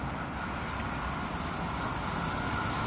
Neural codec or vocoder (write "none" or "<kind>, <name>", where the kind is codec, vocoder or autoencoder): none